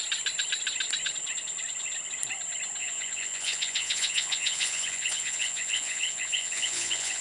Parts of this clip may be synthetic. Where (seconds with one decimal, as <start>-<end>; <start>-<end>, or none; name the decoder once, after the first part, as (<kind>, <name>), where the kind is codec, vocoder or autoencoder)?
2.8-7.2 (vocoder, Vocos)